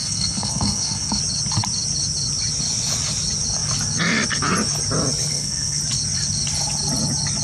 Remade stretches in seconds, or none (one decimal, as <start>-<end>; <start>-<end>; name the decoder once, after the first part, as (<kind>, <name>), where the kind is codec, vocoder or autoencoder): 0.0-1.2 (codec, SNAC); 5.3-5.8